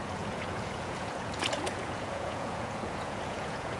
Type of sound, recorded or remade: remade